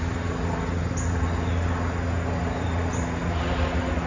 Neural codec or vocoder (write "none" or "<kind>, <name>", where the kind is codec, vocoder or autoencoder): none